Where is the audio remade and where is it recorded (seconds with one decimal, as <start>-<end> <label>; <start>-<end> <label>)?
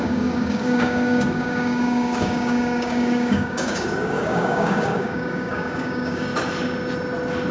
0.0-6.3 remade; 6.3-7.5 recorded